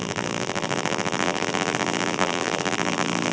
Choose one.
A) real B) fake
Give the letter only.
B